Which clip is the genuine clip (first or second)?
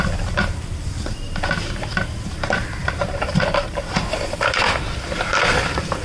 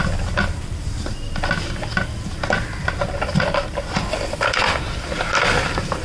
second